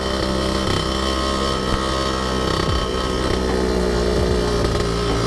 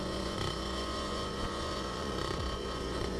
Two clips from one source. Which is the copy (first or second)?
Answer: second